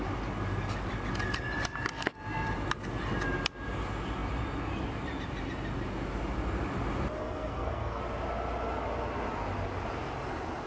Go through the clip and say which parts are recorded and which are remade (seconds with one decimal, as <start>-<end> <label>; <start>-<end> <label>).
0.0-7.2 recorded; 7.2-8.0 remade; 8.0-10.7 recorded